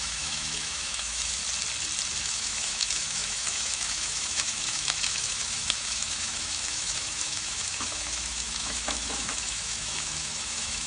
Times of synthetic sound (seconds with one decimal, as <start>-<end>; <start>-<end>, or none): 0.0-1.4; 2.2-10.9